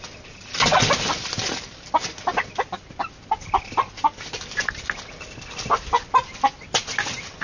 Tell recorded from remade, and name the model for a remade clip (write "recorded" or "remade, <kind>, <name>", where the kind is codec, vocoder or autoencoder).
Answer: recorded